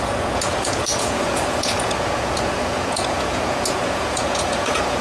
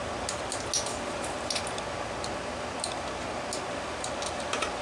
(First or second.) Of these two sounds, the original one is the second